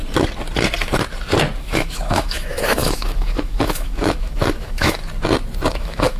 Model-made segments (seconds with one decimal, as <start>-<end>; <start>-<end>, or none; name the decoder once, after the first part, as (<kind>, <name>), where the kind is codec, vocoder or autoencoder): 1.6-5.0 (autoencoder, DAC-VAE); 5.7-6.2